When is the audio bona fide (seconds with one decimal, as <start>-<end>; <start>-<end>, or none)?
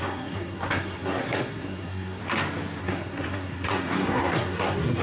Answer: 2.2-2.8